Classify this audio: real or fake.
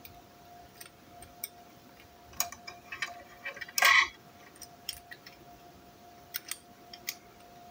real